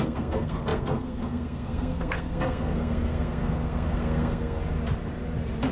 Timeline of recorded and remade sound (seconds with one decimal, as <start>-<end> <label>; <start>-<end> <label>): 0.0-4.6 remade; 4.6-5.7 recorded